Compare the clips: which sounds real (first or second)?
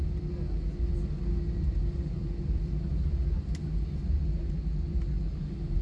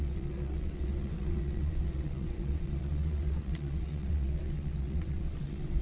first